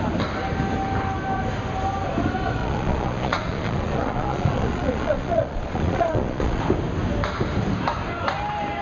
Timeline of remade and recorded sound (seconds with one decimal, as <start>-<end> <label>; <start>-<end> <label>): 0.0-2.6 recorded; 2.6-6.6 remade; 6.6-8.8 recorded